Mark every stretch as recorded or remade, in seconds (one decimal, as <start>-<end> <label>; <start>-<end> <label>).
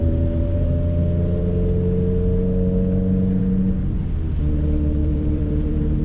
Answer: 0.0-0.7 remade; 0.7-5.0 recorded; 5.0-6.0 remade